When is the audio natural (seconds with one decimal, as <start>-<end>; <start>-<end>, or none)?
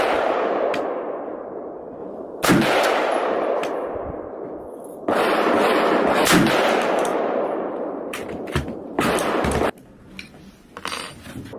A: 0.0-2.0; 2.5-7.1; 9.1-11.6